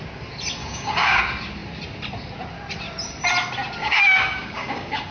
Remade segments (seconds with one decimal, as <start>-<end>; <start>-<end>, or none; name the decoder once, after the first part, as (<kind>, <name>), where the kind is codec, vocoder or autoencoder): 0.6-1.2 (codec, DAC); 3.8-5.1